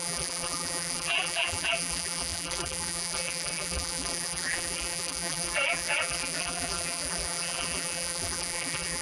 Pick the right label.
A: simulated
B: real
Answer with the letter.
A